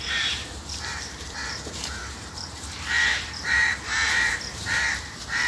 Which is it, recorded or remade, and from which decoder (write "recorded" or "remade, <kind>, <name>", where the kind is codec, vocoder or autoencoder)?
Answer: remade, vocoder, BigVGAN v2